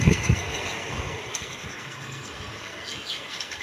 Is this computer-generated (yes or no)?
yes